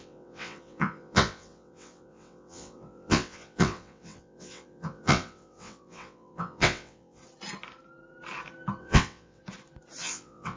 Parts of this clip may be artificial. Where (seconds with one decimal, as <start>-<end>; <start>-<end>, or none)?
0.0-7.2; 8.8-9.4; 10.0-10.6